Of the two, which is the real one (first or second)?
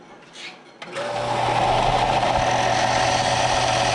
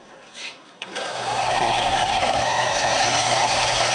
first